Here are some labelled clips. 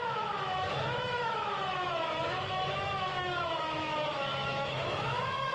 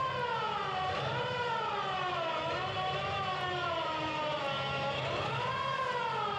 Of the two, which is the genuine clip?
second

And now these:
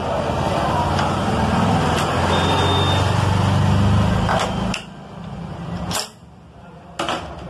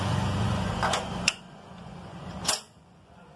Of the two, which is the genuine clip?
first